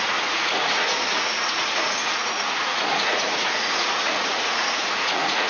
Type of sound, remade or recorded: remade